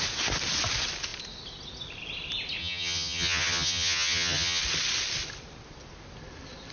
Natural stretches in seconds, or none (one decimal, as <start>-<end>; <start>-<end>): 0.0-2.6; 4.6-6.7